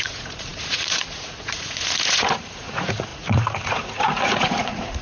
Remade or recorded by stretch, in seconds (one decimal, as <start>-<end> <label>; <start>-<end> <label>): 0.0-5.0 remade